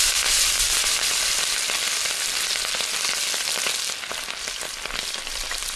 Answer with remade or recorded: recorded